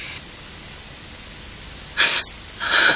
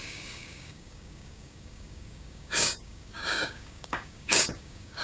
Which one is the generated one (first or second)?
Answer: second